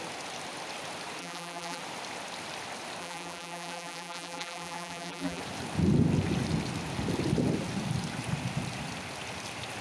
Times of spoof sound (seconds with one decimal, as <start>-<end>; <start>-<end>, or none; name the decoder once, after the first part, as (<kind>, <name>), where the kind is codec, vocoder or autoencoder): 1.2-1.8 (vocoder, BigVGAN v2); 3.0-5.4